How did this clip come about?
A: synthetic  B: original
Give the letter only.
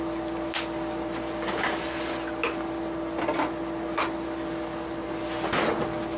B